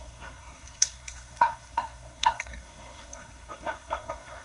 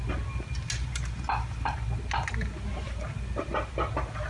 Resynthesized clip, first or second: first